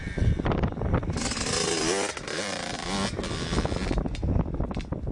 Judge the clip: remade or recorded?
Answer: recorded